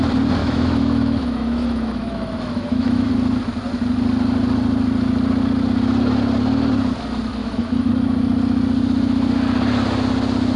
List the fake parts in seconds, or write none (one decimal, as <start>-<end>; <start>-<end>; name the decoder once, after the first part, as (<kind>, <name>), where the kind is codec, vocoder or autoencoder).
0.4-3.1 (autoencoder, DAC-VAE); 7.4-7.9